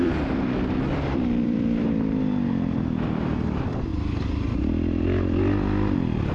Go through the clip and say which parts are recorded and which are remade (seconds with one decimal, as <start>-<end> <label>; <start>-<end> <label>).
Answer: 0.0-3.9 remade; 3.9-6.3 recorded